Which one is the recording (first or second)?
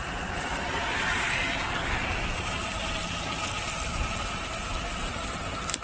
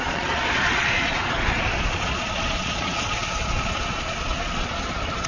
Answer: first